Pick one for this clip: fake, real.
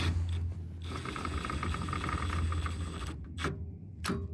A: real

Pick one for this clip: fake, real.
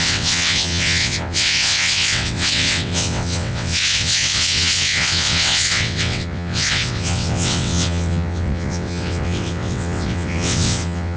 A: fake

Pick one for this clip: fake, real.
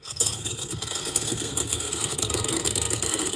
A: fake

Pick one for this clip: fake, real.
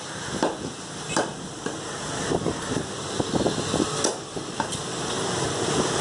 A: real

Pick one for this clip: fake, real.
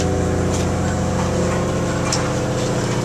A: real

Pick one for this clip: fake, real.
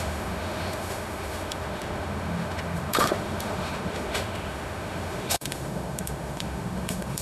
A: fake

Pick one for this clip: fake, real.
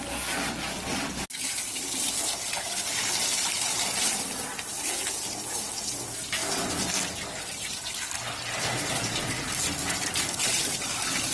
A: real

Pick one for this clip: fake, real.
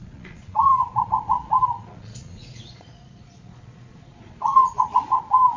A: fake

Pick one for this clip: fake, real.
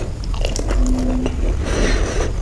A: real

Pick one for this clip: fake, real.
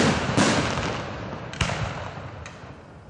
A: real